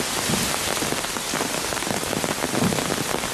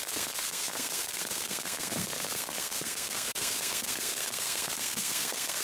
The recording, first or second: first